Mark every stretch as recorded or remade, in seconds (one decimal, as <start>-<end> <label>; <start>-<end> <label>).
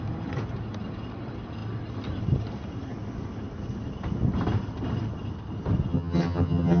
0.0-5.9 recorded; 5.9-6.8 remade